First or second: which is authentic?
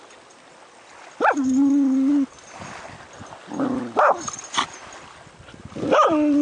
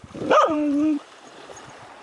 first